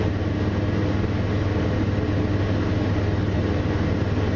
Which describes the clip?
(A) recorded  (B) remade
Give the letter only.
A